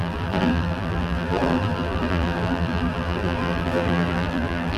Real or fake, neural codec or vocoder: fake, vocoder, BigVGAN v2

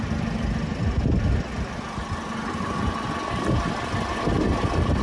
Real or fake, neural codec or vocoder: real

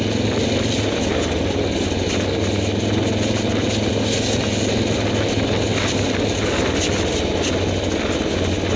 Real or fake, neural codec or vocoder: real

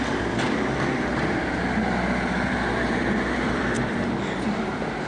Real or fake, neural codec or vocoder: fake, vocoder, BigVGAN v2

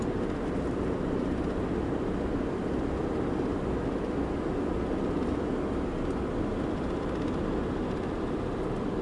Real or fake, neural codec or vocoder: real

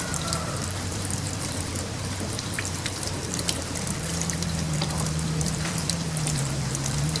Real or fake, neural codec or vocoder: fake, vocoder, BigVGAN v2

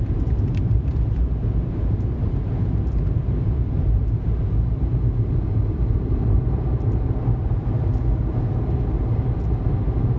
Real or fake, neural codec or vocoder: fake, vocoder, BigVGAN v2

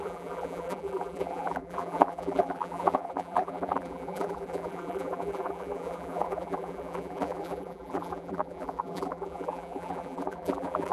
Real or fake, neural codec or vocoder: fake, vocoder, BigVGAN v2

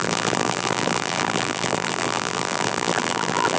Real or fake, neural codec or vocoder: fake, vocoder, BigVGAN v2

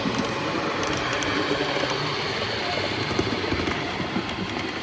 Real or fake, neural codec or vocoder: fake, vocoder, BigVGAN v2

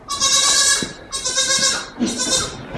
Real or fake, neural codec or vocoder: real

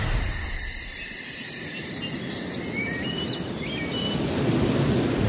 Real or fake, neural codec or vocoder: real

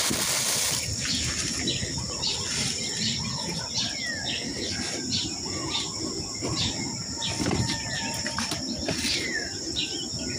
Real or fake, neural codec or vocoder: real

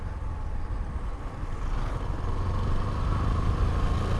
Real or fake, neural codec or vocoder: real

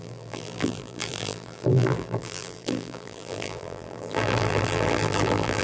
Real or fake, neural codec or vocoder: fake, vocoder, BigVGAN v2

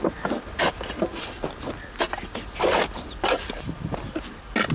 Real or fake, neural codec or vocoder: real